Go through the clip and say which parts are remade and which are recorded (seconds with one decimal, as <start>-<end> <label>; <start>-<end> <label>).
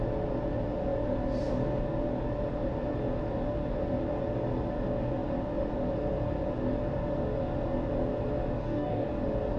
0.0-8.6 recorded; 8.6-9.1 remade; 9.1-9.6 recorded